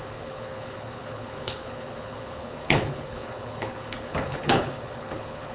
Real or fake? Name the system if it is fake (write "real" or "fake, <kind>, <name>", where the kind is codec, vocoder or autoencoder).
fake, codec, HILCodec